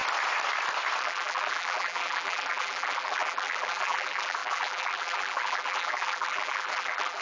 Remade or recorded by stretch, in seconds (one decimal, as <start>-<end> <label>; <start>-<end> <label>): 0.0-1.0 recorded; 1.0-7.2 remade